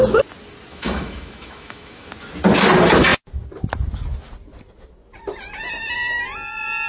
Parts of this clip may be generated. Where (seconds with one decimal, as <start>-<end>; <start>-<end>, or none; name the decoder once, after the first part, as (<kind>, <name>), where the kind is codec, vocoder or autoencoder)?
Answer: 0.7-2.1 (autoencoder, DAC-VAE)